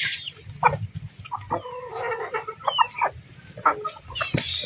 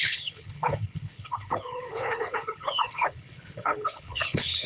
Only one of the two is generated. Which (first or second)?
second